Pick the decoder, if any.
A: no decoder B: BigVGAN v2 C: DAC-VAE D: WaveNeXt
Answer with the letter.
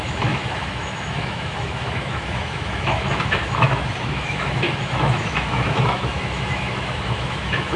C